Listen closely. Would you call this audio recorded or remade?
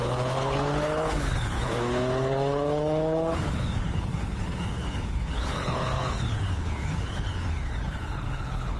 remade